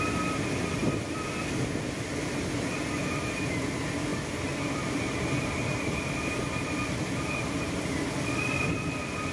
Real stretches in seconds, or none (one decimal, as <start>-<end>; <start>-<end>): 0.0-9.3